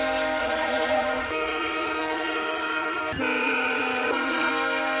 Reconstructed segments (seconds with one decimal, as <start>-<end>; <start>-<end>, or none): 0.4-3.0; 3.4-4.5